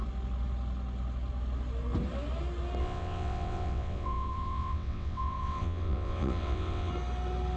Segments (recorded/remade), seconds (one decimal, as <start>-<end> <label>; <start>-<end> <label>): 0.0-2.8 recorded; 2.8-6.9 remade; 6.9-7.6 recorded